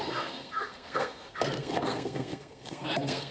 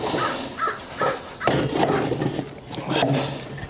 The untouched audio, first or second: second